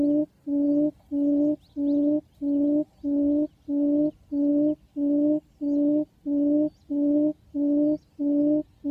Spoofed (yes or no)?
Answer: no